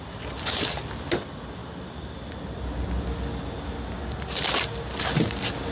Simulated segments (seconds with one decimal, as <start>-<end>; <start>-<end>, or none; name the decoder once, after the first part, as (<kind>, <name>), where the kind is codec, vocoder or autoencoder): none